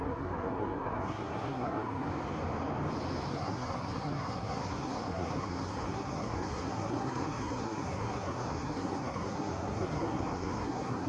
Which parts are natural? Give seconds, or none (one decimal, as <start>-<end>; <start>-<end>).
2.1-3.3